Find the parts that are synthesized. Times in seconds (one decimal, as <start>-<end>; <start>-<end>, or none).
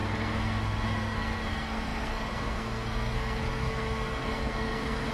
0.0-5.1